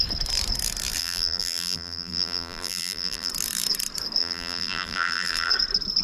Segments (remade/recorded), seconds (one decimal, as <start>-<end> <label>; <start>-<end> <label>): 0.0-1.0 recorded; 1.0-3.3 remade; 3.3-4.2 recorded; 4.2-5.5 remade; 5.5-6.0 recorded